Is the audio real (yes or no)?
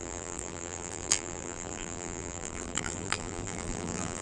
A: no